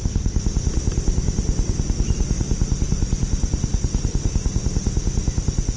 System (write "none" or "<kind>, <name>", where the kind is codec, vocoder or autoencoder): none